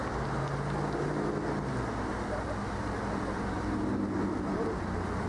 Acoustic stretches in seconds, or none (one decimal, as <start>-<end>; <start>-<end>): 0.0-5.3